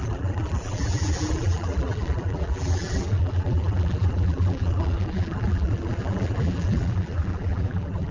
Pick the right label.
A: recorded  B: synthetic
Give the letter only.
B